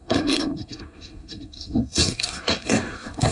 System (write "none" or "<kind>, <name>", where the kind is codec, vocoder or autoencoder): codec, SNAC